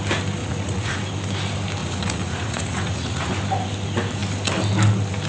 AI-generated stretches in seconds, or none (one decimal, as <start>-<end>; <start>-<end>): 0.4-1.0; 1.8-3.4